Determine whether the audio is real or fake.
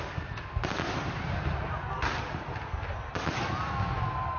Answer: real